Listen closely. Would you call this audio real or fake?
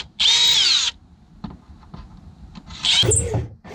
real